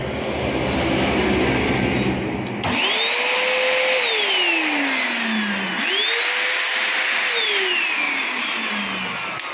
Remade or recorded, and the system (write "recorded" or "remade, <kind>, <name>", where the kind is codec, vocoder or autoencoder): recorded